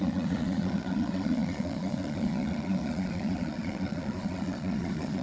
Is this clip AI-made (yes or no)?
yes